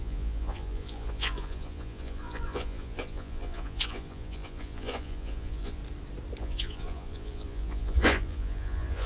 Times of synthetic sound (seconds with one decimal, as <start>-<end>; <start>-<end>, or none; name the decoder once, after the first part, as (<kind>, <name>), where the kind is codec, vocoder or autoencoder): 0.0-5.8 (vocoder, Vocos); 6.4-9.1